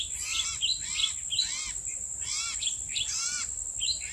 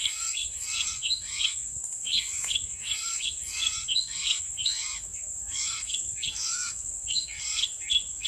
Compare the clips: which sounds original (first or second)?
first